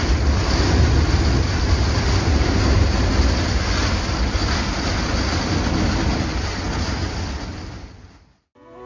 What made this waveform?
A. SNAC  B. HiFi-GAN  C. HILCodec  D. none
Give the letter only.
D